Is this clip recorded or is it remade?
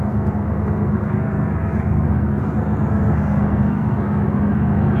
remade